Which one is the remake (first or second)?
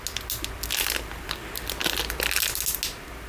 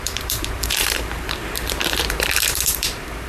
second